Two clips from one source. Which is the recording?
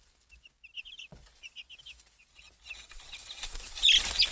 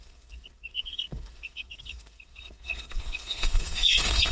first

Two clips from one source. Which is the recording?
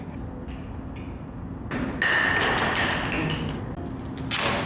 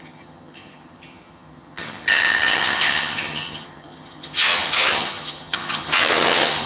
first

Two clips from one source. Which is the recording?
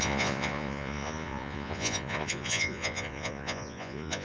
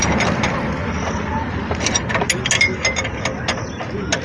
second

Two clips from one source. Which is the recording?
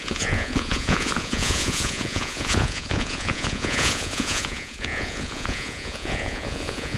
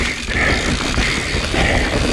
second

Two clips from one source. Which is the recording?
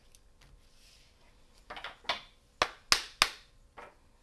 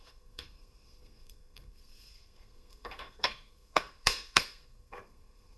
first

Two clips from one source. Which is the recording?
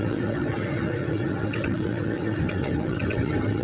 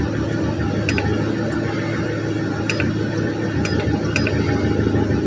second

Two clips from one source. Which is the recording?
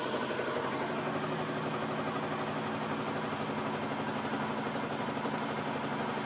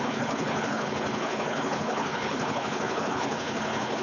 first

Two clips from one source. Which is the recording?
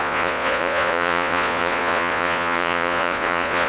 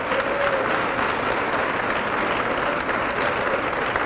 second